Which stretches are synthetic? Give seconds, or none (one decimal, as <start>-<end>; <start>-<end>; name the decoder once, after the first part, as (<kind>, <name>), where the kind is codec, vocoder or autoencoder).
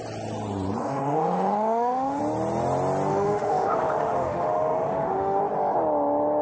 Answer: 0.8-2.2 (autoencoder, DAC-VAE); 3.1-5.4